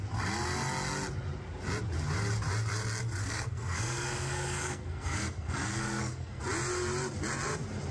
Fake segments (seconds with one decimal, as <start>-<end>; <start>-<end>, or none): 3.2-6.4